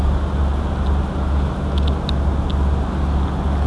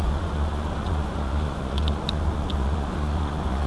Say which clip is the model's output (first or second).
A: second